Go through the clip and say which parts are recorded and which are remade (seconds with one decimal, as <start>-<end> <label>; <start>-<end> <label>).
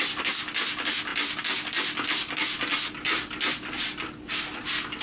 0.0-5.0 recorded